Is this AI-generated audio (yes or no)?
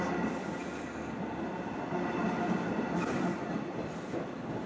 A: no